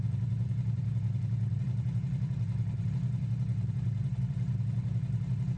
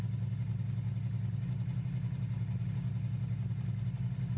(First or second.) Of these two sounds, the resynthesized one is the first